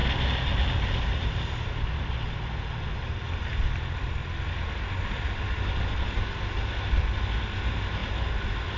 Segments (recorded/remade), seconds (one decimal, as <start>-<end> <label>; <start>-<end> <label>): 0.0-8.8 recorded